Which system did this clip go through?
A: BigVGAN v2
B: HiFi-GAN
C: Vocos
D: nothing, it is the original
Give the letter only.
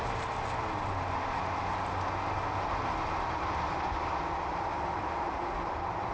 D